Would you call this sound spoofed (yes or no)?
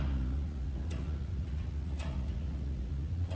yes